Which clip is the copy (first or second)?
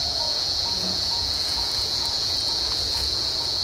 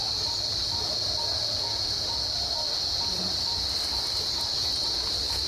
first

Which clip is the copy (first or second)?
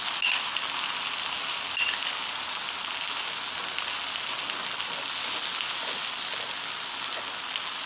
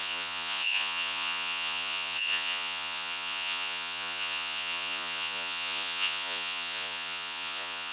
second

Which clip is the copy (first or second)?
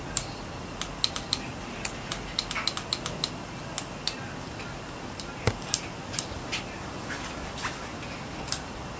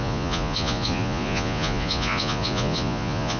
second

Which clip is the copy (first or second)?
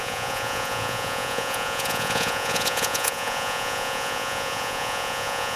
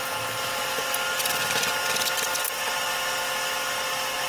first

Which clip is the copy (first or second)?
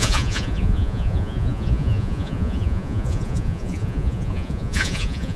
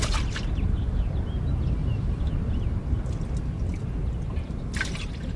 first